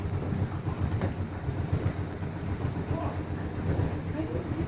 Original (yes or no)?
yes